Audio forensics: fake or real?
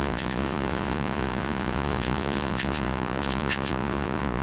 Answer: fake